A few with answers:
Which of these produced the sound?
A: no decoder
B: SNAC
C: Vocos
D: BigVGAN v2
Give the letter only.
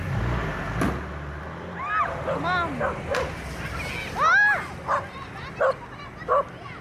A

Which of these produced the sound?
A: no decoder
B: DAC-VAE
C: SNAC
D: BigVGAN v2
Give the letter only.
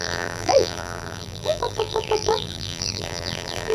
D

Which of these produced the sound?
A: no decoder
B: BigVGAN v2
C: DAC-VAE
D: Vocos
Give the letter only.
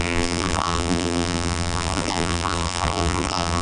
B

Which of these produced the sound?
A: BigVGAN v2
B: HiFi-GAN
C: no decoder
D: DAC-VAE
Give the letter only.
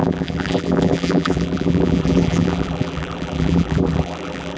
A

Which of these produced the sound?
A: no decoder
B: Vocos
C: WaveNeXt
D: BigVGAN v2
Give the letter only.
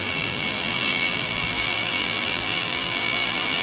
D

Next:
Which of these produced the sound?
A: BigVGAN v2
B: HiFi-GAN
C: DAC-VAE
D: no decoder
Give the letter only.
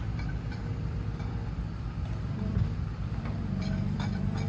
A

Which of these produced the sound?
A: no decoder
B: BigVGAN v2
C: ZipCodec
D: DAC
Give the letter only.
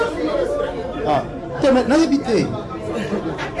B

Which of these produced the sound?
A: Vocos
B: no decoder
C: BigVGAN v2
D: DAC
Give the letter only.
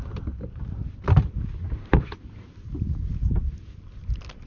C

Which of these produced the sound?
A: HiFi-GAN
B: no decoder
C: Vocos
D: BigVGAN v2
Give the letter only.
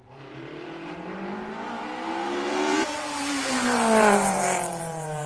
D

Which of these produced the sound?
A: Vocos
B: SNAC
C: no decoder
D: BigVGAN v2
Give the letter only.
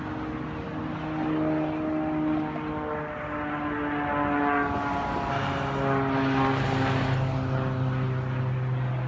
C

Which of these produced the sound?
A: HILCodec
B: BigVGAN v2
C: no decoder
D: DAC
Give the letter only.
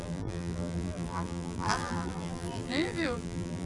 B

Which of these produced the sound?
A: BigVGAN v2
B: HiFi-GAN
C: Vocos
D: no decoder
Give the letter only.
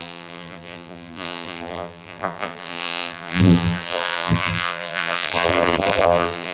A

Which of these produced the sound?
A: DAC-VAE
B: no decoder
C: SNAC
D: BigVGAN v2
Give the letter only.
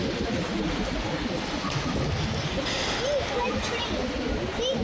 B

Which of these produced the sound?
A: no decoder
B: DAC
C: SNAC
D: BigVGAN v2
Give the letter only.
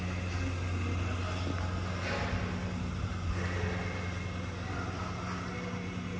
A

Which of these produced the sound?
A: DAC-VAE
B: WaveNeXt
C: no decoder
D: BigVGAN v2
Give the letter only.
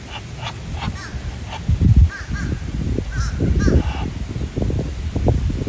C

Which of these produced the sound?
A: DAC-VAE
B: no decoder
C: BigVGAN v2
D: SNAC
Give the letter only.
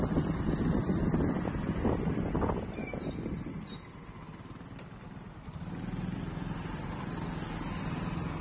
B